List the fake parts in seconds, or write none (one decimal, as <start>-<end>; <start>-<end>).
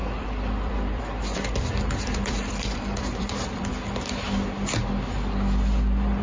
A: 0.0-3.7